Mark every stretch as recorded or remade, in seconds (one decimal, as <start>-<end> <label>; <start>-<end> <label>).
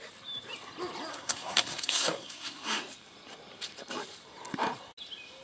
0.0-1.1 recorded; 1.1-2.8 remade; 2.8-5.4 recorded